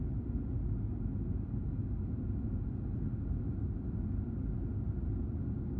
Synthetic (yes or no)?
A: no